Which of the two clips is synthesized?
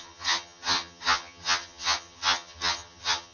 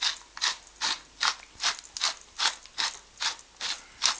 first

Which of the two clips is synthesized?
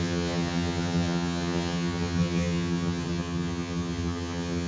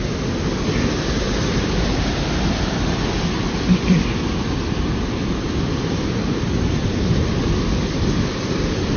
first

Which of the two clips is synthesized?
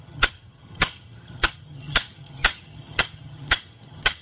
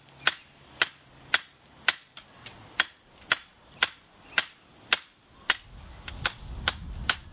first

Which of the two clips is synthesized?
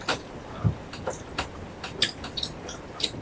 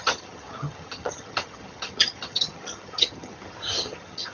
second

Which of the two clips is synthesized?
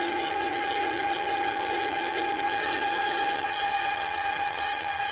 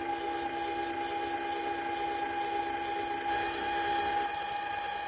first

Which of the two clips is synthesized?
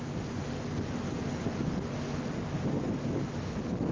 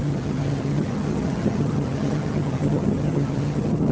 second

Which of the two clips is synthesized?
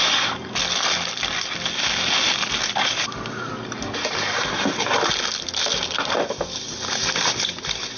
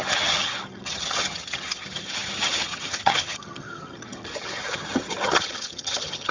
second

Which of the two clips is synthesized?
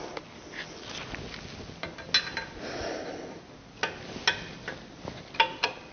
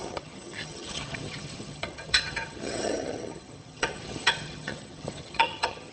second